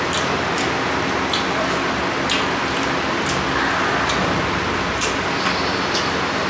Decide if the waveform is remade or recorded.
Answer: recorded